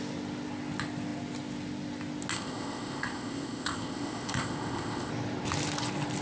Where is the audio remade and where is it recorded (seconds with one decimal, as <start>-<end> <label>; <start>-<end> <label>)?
0.0-2.3 recorded; 2.3-5.1 remade; 5.1-6.2 recorded